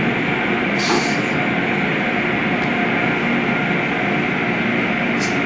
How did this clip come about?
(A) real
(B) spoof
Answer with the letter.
A